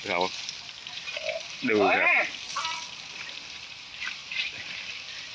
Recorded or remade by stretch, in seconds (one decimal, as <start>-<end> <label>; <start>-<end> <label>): 0.0-0.8 recorded; 0.8-2.3 remade; 2.3-5.3 recorded